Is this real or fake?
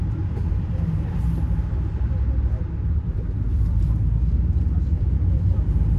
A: fake